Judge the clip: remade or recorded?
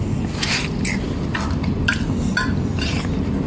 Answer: recorded